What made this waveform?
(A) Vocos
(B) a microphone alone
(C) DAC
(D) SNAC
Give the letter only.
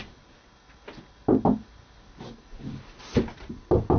B